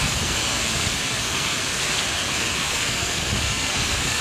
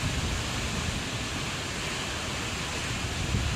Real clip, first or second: second